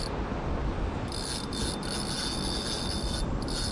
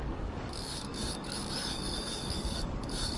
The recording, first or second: first